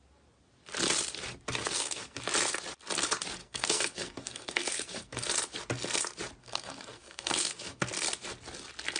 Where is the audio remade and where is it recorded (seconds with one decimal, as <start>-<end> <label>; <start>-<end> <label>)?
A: 0.0-1.6 recorded; 1.6-2.2 remade; 2.2-3.4 recorded; 3.4-5.3 remade; 5.3-6.4 recorded; 6.4-7.9 remade; 7.9-9.0 recorded